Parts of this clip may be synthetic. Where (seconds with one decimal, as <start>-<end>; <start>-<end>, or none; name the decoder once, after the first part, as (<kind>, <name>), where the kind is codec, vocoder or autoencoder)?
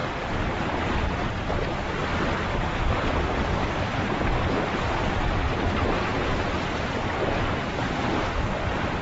1.4-2.0 (vocoder, BigVGAN v2); 3.2-9.0